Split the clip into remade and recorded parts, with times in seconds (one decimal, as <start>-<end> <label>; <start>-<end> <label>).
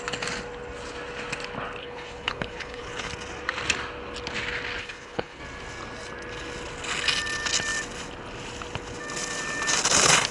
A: 0.0-1.8 recorded; 1.8-3.1 remade; 3.1-4.8 recorded; 4.8-5.4 remade; 5.4-10.3 recorded